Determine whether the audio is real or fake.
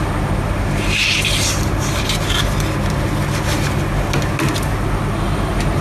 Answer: real